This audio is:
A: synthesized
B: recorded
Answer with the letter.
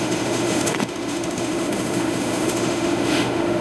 A